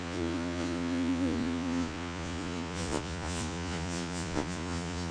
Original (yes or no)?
no